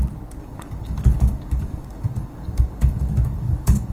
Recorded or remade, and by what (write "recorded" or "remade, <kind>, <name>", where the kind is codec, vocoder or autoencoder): remade, codec, DAC